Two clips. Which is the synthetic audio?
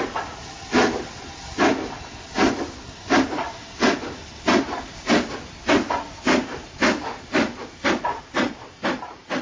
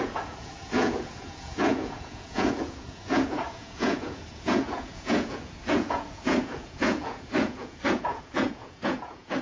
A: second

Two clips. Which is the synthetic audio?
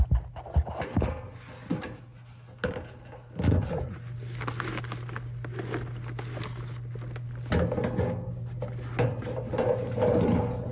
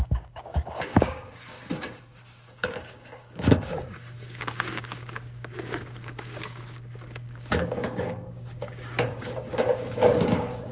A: second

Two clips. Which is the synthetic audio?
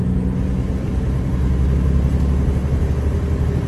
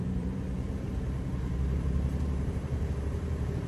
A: second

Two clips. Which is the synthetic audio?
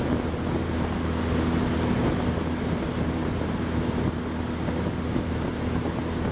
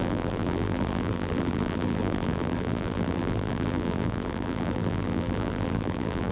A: second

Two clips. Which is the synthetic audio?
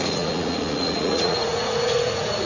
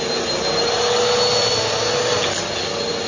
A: first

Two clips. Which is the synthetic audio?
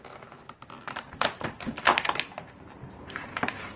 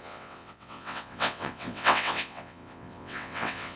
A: second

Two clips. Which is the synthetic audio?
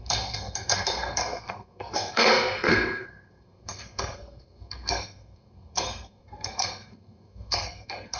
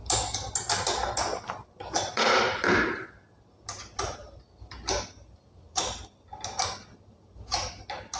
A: first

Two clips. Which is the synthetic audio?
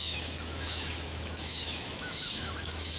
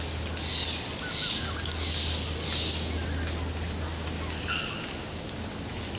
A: first